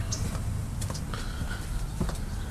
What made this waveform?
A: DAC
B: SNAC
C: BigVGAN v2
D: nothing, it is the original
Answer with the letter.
D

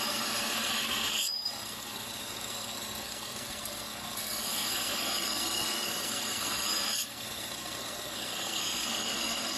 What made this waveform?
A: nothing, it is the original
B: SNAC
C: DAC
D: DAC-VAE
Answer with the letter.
B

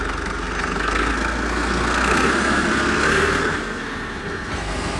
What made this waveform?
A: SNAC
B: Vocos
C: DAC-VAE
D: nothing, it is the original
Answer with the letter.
A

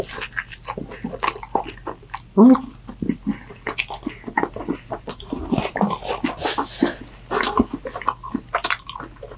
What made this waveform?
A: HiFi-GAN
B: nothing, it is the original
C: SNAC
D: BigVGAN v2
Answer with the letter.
B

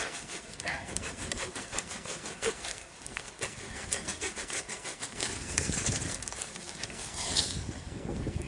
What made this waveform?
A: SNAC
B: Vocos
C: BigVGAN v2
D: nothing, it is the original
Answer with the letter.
A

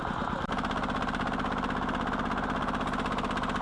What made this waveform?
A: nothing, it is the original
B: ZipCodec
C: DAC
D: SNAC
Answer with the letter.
A